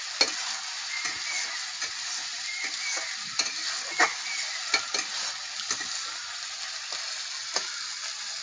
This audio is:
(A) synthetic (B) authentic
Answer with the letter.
B